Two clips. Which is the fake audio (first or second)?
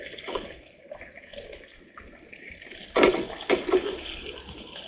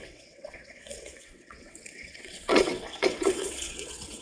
second